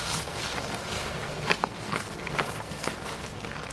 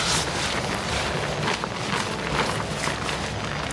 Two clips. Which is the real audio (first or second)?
second